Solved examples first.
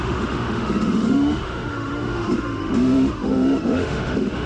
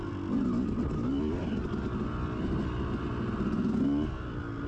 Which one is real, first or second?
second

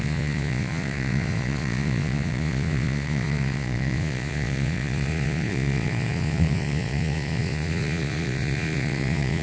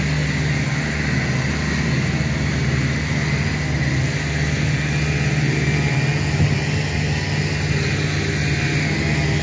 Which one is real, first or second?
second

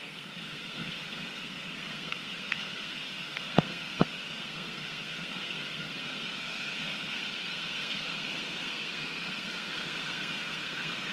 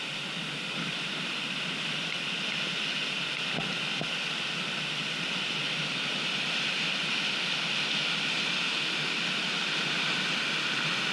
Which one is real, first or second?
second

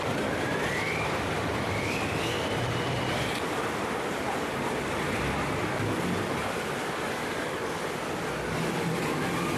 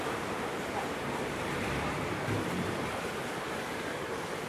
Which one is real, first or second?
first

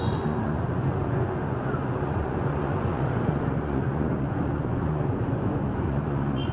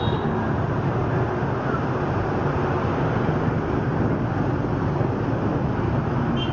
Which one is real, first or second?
second